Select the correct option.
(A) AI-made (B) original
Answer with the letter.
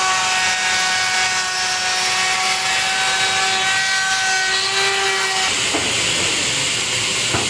B